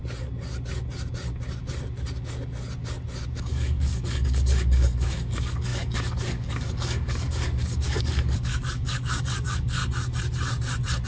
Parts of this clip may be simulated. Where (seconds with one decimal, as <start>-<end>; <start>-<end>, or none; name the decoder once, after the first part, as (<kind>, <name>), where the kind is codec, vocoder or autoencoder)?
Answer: 3.3-9.8 (codec, DAC)